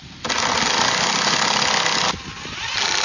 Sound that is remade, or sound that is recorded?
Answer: recorded